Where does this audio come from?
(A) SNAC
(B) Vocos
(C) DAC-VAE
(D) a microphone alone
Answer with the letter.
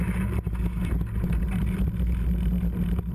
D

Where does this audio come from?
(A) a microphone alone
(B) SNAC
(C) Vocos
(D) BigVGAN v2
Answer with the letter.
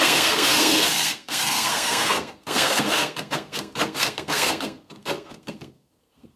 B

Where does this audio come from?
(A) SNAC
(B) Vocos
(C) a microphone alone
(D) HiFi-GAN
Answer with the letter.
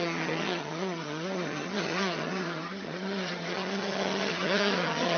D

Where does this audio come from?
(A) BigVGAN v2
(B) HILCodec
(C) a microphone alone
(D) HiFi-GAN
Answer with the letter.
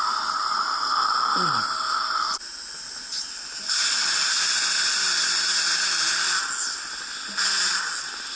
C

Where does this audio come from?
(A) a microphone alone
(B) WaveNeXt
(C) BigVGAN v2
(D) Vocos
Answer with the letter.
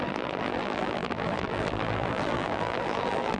C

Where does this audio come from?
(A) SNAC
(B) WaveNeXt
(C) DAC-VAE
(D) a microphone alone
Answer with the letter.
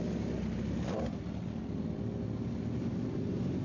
D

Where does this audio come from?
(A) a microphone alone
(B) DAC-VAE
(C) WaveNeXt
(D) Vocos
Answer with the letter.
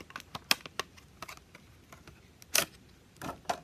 A